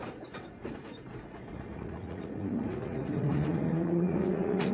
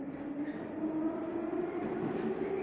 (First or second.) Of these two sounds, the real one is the second